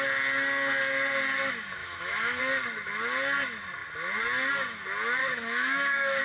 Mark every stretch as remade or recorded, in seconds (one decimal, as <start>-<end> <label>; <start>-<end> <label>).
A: 0.0-1.8 recorded; 1.8-2.4 remade; 2.4-5.2 recorded; 5.2-6.2 remade